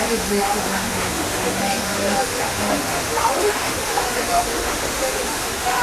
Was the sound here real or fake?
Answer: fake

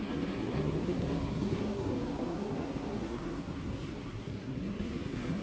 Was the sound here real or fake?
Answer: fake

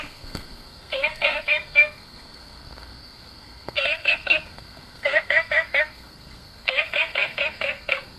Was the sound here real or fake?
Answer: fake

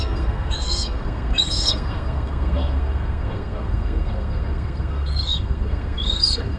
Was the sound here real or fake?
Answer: fake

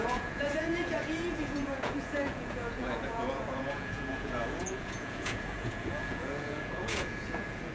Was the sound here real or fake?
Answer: fake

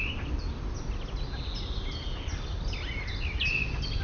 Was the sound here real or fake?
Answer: real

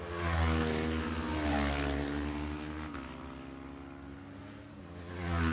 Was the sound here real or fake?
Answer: real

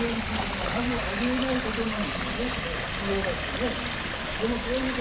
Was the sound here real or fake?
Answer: real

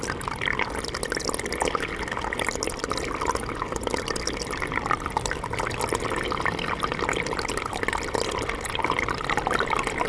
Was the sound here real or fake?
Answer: real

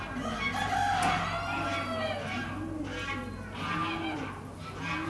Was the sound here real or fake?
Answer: real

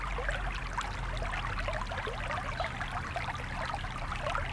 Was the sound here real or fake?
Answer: real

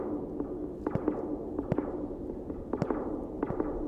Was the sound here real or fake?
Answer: real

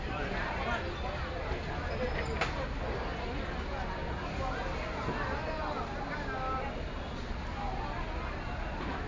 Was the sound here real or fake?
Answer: real